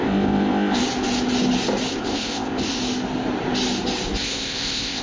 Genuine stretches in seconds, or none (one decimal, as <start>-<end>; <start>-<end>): 0.8-1.9; 2.8-4.2